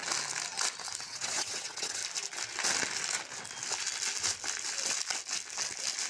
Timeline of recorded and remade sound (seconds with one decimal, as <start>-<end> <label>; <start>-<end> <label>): 0.0-1.0 recorded; 1.0-2.0 remade; 2.0-6.1 recorded